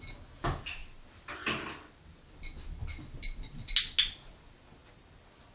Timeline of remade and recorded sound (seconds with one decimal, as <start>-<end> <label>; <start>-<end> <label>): 0.0-5.5 recorded